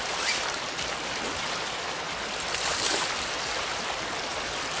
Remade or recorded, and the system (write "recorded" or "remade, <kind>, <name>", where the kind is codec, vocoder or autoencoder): recorded